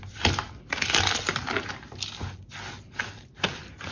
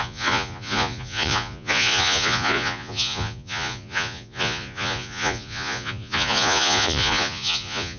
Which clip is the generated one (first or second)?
second